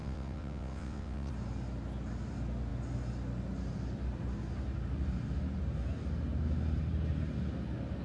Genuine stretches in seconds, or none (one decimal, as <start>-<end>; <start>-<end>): 1.3-8.0

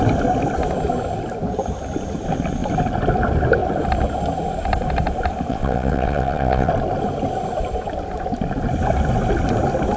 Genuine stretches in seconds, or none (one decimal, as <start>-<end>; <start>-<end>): 0.0-5.5; 6.7-10.0

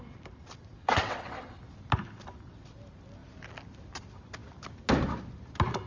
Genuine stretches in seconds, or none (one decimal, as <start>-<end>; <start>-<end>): 0.0-0.8; 1.6-5.9

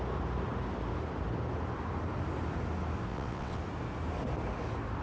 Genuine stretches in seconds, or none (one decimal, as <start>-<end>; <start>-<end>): 0.0-3.1; 3.6-5.0

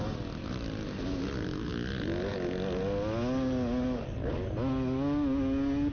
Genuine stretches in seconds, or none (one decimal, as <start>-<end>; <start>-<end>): 0.0-5.9

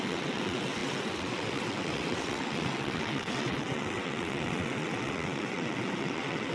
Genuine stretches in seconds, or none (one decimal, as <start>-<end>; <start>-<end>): none

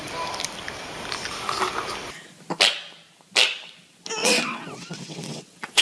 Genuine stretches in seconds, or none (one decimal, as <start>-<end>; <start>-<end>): 0.0-4.2